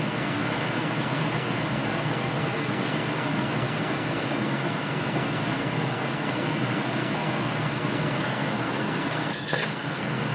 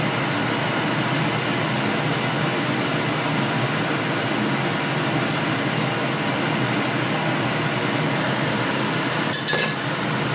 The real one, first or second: second